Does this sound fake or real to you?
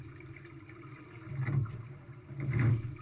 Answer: real